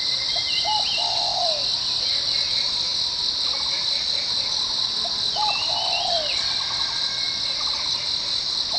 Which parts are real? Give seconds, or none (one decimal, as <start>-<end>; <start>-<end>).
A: 0.0-8.8

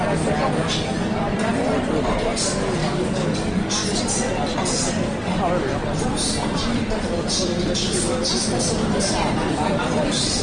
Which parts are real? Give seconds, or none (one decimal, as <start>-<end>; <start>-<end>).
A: 0.0-2.8; 4.0-10.4

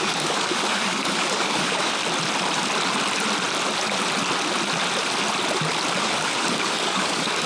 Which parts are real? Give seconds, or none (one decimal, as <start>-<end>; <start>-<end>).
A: 2.0-6.0

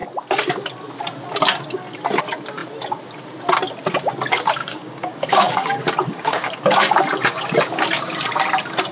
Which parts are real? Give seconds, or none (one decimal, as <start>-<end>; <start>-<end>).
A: 0.0-4.6; 7.0-8.9

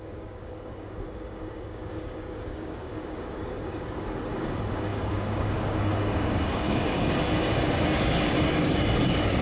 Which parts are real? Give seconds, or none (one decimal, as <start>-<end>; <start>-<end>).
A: none

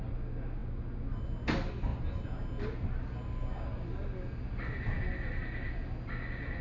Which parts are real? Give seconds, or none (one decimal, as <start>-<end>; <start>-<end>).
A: 0.0-6.6